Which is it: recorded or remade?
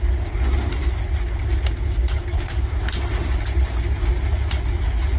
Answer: recorded